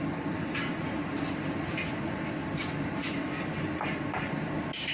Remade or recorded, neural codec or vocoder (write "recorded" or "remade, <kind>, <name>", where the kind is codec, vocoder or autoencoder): recorded